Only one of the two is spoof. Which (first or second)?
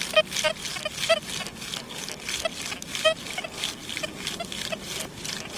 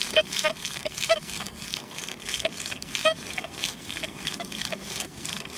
second